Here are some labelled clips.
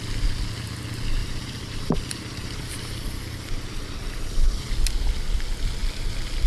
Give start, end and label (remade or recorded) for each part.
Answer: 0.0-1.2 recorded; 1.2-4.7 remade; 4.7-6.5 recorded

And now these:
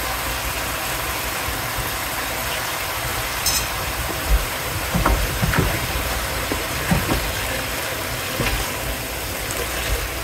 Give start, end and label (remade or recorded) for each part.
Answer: 0.0-3.1 recorded; 3.1-6.8 remade; 6.8-10.2 recorded

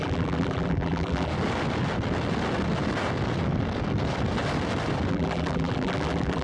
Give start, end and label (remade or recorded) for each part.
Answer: 0.0-1.3 remade; 1.3-5.1 recorded; 5.1-6.4 remade

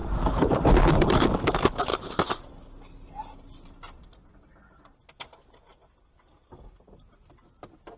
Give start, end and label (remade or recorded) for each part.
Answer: 0.0-1.4 remade; 1.4-1.9 recorded; 1.9-2.5 remade; 2.5-8.0 recorded

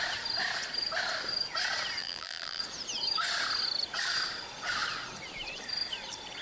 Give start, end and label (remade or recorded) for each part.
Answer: 0.0-2.0 recorded; 2.0-2.6 remade; 2.6-6.4 recorded

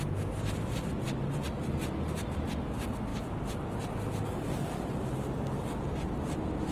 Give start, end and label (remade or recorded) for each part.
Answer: 0.0-6.7 recorded

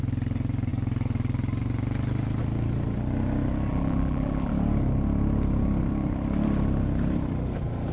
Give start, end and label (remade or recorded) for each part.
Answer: 0.0-3.7 recorded; 3.7-4.5 remade; 4.5-7.9 recorded

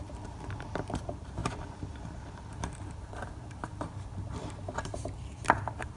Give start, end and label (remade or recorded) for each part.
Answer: 0.0-6.0 remade